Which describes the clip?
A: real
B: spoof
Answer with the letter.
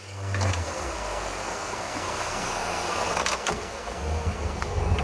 B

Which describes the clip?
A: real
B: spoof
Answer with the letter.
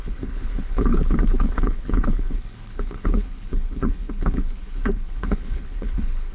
B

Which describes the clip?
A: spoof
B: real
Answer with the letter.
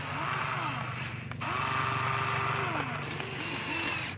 B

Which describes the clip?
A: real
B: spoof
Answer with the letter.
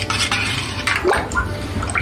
A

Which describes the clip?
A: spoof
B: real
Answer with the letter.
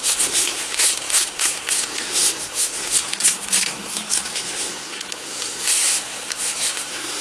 A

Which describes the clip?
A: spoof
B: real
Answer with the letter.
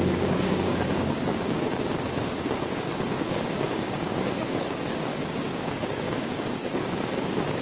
A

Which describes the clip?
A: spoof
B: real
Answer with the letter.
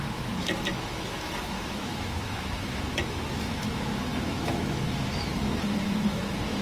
A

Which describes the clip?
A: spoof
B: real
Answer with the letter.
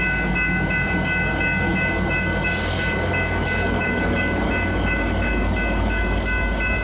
A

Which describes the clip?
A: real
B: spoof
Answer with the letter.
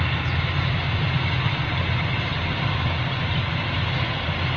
A